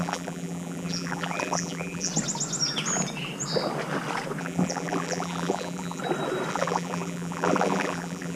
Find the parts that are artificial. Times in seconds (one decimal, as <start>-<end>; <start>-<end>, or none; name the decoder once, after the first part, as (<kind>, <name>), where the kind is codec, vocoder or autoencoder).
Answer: 0.0-2.1 (vocoder, BigVGAN v2); 4.4-6.0; 6.5-8.4

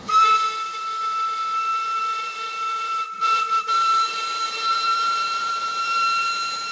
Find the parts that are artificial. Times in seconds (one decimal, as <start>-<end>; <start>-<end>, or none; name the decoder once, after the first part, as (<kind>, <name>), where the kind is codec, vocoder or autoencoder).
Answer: 0.0-6.7 (vocoder, BigVGAN v2)

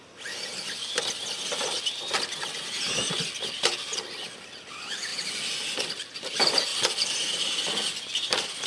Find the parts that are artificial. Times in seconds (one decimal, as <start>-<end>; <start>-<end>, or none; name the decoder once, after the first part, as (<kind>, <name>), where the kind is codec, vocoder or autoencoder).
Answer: 5.1-5.8 (vocoder, BigVGAN v2); 6.7-8.7